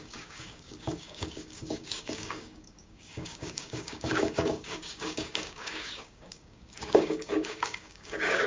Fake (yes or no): yes